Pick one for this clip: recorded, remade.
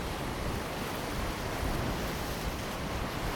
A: remade